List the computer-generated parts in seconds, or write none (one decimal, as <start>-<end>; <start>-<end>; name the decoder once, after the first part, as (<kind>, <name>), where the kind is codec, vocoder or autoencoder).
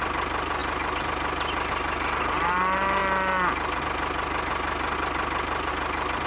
none